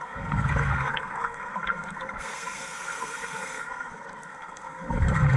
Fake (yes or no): yes